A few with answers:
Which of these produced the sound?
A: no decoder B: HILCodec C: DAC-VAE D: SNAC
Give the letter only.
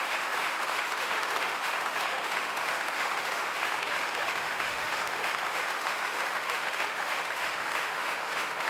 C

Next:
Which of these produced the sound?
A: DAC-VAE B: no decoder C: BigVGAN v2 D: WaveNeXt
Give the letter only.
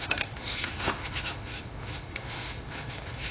A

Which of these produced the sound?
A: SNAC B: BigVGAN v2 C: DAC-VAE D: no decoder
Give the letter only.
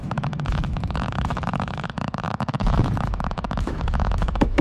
C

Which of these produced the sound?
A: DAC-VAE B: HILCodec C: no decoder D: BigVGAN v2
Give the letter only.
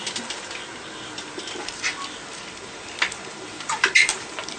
C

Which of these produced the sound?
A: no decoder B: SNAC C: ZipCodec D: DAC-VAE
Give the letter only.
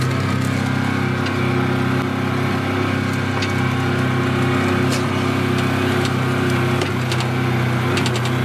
A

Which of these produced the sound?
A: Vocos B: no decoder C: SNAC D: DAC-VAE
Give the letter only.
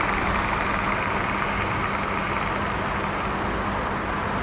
B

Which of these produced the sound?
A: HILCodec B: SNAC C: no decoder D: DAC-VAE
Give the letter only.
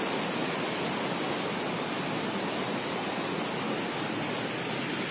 C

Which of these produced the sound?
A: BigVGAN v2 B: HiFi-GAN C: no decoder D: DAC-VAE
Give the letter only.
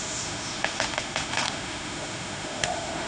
D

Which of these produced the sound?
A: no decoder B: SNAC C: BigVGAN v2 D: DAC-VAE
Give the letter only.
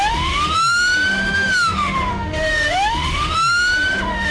D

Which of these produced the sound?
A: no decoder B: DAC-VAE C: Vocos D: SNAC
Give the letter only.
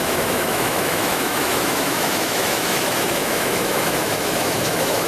B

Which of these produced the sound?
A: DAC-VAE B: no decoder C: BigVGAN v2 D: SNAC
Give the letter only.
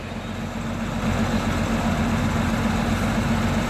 B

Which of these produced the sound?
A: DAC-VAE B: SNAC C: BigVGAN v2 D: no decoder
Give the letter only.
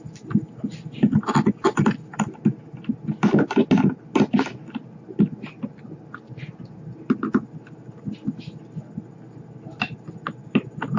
D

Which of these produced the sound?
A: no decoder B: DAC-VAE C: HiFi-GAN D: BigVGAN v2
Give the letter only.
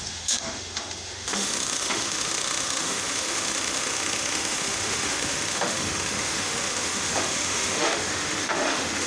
B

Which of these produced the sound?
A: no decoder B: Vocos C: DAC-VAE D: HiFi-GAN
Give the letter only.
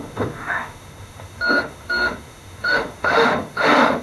C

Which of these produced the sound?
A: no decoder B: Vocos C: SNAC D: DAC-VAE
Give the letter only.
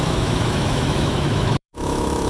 D